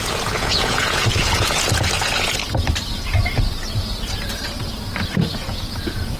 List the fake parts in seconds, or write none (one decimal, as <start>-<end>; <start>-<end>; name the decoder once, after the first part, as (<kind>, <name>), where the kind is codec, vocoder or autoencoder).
0.0-2.4 (vocoder, Vocos); 5.1-6.2

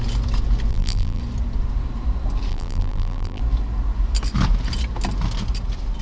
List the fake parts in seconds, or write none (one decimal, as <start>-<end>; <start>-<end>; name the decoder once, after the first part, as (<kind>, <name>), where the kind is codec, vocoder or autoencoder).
0.7-1.2 (vocoder, BigVGAN v2); 2.5-3.4

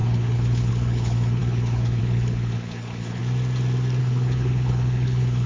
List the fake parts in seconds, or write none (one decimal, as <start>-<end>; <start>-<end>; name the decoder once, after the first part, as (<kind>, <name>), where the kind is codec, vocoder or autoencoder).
0.0-3.2 (codec, HILCodec); 4.0-5.5

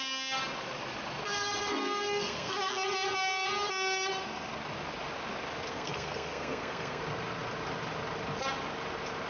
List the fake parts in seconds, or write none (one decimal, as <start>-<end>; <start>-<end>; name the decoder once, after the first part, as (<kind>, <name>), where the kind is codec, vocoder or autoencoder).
1.2-2.7 (codec, SNAC); 5.7-7.0

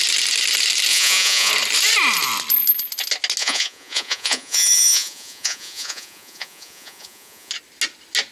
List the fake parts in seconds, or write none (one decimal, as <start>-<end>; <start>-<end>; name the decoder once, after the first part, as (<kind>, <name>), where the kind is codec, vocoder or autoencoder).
0.9-1.5 (vocoder, Vocos); 3.4-7.5

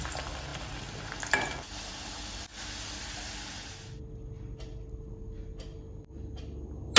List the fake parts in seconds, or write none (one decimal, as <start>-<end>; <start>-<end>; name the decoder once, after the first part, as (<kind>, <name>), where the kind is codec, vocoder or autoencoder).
none

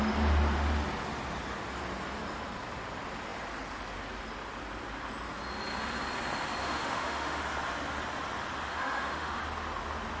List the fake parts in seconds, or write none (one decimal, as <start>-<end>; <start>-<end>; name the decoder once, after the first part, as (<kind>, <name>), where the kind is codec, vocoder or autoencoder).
6.6-7.4 (autoencoder, DAC-VAE); 8.7-9.4